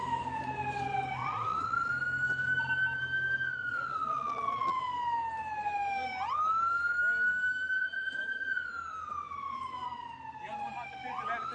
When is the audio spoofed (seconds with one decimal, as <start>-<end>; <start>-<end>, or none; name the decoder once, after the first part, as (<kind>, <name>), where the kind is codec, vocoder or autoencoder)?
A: 1.2-1.9 (vocoder, Vocos); 3.6-4.8; 7.8-8.7